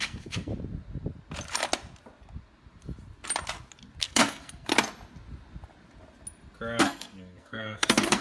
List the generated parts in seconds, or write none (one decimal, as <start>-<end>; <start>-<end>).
0.0-0.5; 4.0-4.7; 6.8-8.2